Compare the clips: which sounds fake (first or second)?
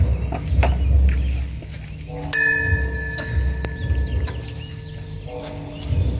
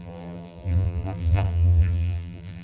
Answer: second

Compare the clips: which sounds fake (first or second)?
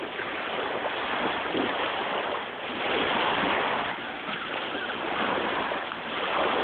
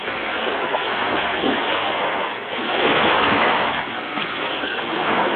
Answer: second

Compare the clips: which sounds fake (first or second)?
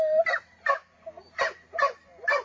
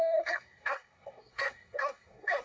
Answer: second